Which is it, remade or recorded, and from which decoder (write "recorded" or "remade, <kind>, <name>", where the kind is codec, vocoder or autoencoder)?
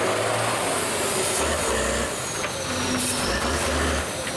recorded